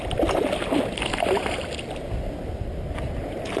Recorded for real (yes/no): yes